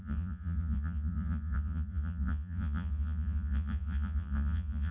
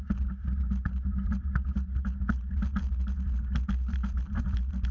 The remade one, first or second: first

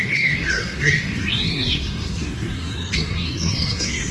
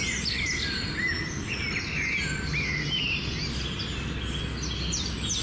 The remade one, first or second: first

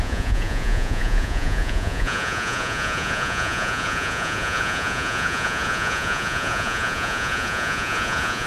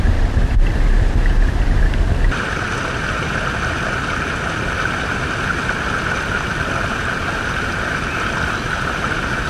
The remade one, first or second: first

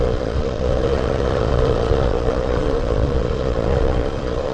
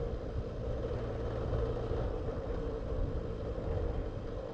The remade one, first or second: first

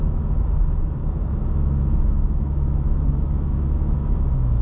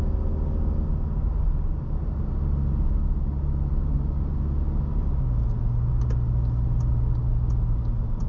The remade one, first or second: first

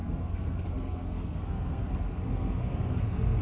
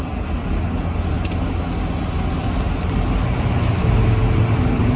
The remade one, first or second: first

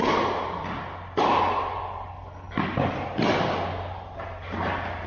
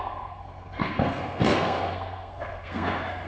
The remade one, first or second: second